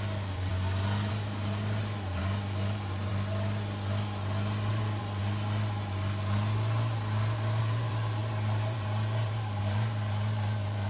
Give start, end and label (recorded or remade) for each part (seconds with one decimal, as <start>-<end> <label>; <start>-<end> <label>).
0.0-0.5 remade; 0.5-1.1 recorded; 1.1-3.1 remade; 3.1-4.7 recorded; 4.7-5.2 remade; 5.2-7.6 recorded; 7.6-10.9 remade